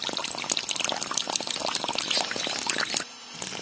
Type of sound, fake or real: real